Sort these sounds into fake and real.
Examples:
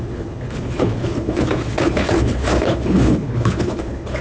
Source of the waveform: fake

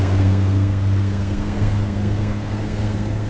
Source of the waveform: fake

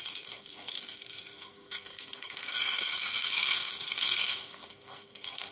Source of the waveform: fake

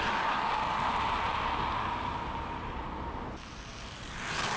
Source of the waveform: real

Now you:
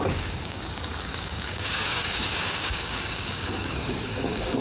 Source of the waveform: fake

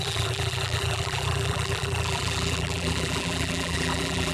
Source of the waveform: fake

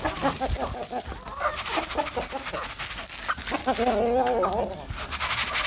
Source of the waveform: real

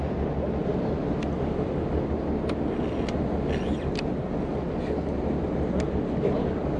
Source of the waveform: real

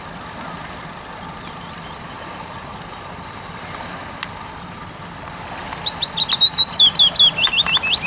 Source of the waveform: fake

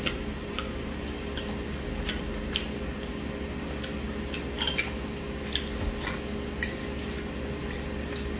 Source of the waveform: real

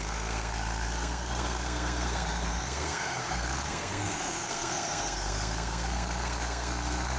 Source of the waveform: fake